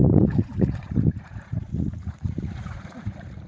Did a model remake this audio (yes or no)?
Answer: yes